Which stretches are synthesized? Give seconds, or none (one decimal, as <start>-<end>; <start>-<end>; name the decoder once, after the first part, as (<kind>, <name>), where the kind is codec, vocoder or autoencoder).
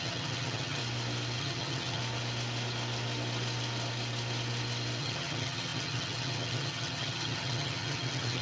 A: 0.0-0.8 (vocoder, HiFi-GAN); 1.4-2.0; 5.0-8.4